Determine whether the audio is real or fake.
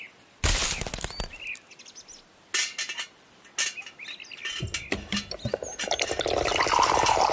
real